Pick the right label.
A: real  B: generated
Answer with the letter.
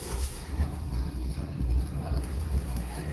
B